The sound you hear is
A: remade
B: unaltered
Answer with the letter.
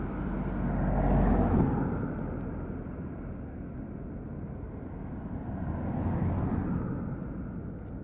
B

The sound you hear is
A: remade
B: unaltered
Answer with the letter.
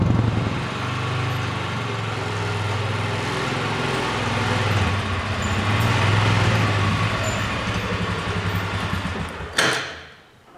B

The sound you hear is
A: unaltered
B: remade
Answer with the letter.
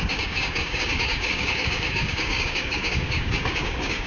B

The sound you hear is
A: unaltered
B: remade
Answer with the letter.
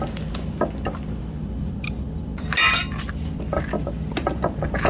A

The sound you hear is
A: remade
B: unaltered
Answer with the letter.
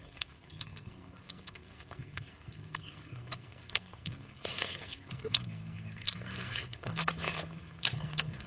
A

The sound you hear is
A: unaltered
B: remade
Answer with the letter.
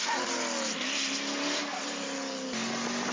A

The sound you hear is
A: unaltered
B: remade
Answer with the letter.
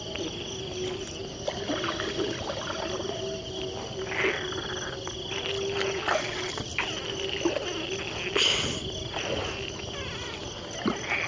A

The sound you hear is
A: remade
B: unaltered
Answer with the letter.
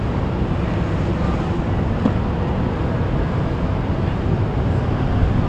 B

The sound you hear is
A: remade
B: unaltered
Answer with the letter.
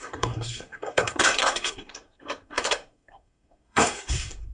A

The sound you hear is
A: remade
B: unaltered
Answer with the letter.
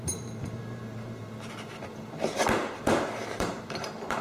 A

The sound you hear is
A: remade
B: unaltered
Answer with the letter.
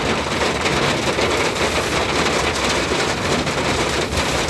B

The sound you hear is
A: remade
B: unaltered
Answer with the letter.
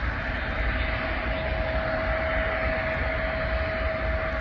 B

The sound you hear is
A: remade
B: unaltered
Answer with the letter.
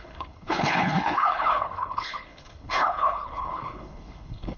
A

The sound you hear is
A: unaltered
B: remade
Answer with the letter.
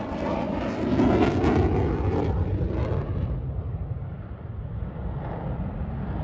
A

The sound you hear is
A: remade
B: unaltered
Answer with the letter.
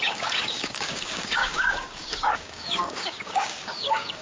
A